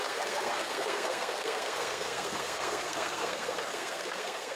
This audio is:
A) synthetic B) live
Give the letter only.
A